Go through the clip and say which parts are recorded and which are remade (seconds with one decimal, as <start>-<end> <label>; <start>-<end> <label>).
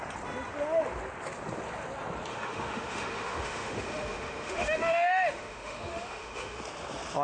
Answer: 0.0-2.3 recorded; 2.3-6.6 remade; 6.6-7.2 recorded